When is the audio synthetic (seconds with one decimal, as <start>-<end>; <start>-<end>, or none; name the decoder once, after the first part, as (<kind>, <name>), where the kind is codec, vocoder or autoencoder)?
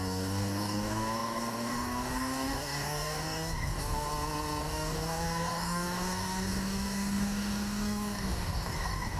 0.0-4.1 (codec, DAC); 4.6-9.2